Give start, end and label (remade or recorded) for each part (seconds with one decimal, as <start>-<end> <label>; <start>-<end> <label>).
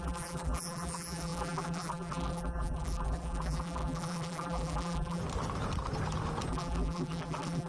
0.0-5.2 remade; 5.2-6.5 recorded; 6.5-7.7 remade